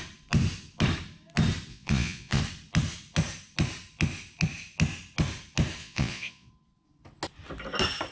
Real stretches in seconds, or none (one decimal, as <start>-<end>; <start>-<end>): 0.0-1.7; 2.4-5.8; 6.5-8.1

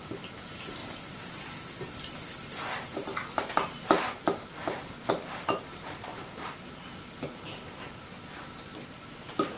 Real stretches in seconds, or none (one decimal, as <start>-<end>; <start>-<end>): 0.0-4.6; 5.1-5.7; 6.7-9.6

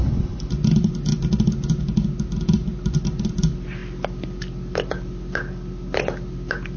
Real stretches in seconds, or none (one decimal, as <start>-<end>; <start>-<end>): 0.5-6.8

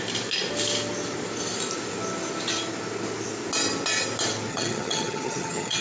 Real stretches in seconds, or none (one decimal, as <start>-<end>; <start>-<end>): 0.0-4.5